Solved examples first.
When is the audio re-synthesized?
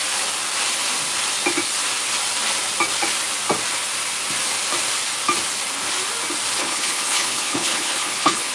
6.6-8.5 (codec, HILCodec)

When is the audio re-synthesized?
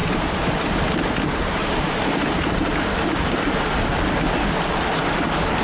0.0-0.9 (vocoder, BigVGAN v2); 1.6-3.4